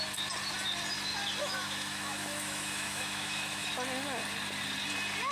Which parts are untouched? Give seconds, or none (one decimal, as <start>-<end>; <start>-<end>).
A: 0.0-1.4; 3.7-5.3